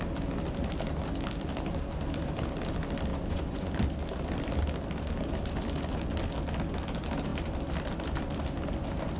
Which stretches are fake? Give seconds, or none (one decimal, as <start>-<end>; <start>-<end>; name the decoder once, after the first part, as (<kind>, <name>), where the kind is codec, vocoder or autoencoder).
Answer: 3.1-3.7 (vocoder, Vocos)